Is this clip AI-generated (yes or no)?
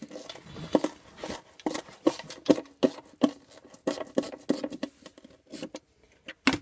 no